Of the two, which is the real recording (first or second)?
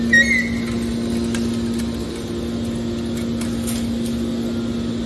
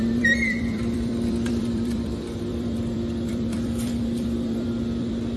first